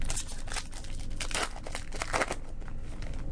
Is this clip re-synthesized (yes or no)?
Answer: no